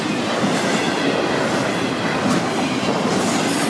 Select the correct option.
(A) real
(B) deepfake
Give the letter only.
A